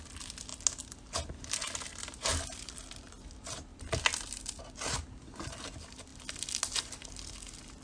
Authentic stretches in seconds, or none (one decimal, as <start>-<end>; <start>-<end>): 0.0-2.3; 2.9-3.7; 4.6-7.8